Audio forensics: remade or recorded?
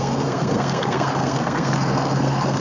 remade